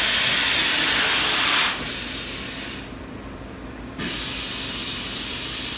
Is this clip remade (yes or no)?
no